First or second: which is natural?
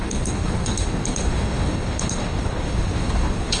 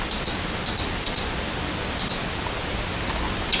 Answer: second